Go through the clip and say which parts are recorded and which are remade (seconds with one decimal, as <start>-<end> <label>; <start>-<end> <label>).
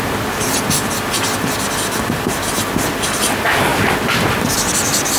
0.0-5.2 recorded